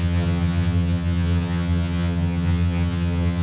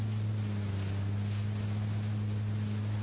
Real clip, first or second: second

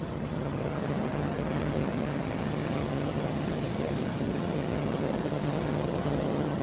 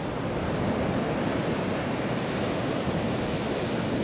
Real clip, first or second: second